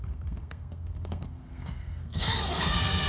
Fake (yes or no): yes